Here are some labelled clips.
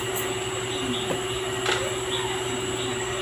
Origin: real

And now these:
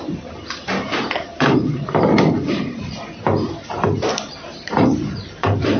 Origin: fake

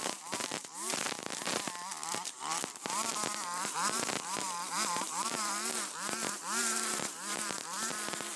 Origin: fake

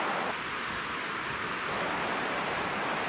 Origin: fake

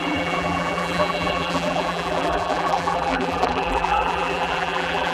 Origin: fake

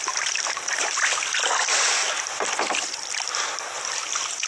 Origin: fake